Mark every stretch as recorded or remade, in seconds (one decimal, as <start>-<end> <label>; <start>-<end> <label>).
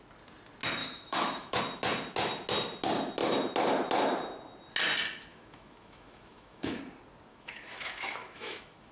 0.0-0.8 recorded; 0.8-1.6 remade; 1.6-5.3 recorded; 5.3-6.8 remade; 6.8-7.3 recorded; 7.3-8.9 remade